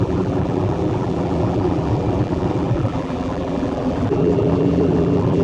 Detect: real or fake fake